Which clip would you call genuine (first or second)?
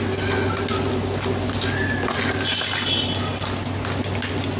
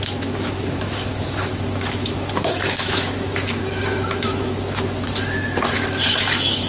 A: first